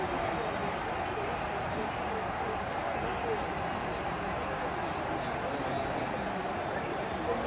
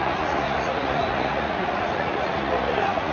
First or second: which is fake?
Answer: second